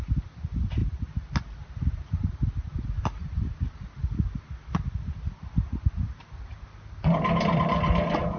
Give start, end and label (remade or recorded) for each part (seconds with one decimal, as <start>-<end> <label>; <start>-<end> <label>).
0.0-8.4 recorded